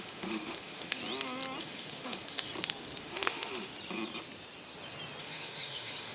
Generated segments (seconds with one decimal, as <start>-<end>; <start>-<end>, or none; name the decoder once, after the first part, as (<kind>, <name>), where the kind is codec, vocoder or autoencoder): 0.0-1.0 (autoencoder, DAC-VAE); 1.6-2.5; 3.0-3.7; 5.2-6.1